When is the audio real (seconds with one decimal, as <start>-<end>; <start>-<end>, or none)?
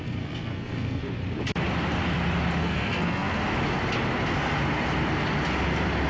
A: 1.0-2.6; 3.4-6.1